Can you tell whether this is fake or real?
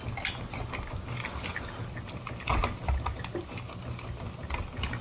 real